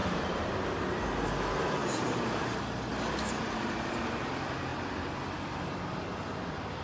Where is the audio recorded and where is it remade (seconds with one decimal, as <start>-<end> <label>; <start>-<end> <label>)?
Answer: 0.0-0.5 remade; 0.5-1.8 recorded; 1.8-4.0 remade; 4.0-6.8 recorded